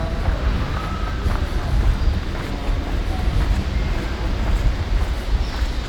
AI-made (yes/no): no